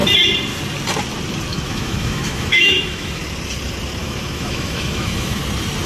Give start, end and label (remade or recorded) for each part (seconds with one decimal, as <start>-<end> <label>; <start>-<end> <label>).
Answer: 0.0-1.5 recorded; 1.5-3.2 remade; 3.2-4.0 recorded; 4.0-5.4 remade; 5.4-5.9 recorded